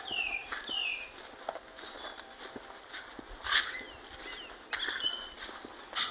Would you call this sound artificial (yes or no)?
no